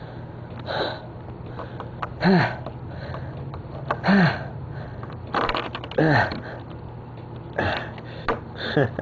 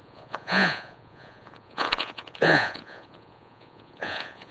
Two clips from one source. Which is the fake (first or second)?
second